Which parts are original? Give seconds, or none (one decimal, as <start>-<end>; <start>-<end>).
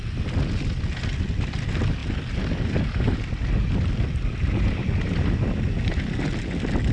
0.0-6.9